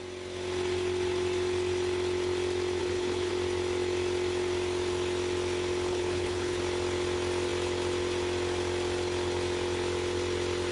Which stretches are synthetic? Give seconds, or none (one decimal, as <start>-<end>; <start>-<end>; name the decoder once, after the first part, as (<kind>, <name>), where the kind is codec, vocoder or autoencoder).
2.8-3.3 (codec, HILCodec); 5.9-6.6